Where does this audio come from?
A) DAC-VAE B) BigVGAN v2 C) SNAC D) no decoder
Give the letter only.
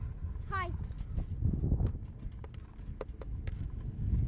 D